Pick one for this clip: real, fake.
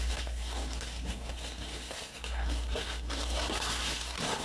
fake